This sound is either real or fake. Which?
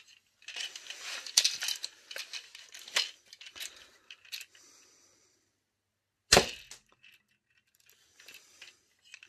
real